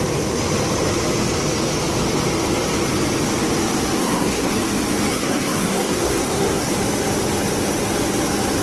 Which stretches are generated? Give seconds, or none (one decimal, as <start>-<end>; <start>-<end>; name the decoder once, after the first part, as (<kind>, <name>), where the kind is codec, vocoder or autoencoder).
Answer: 4.0-4.5 (codec, SNAC); 5.1-6.7